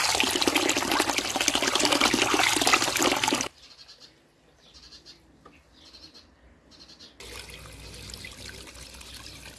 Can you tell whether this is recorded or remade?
recorded